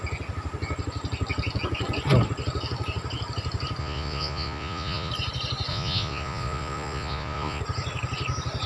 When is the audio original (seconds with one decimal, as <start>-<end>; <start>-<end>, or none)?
0.0-3.8; 5.1-5.7; 7.6-8.7